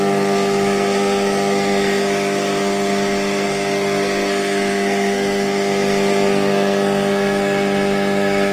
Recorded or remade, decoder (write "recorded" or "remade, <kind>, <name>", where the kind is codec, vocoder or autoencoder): remade, codec, SNAC